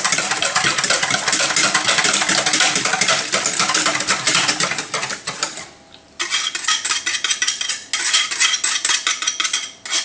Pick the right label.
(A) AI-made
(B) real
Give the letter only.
B